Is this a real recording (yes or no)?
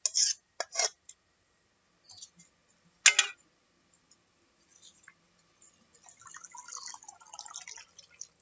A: yes